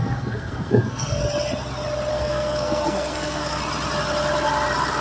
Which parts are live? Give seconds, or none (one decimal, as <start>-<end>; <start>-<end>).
1.2-2.1; 3.6-5.0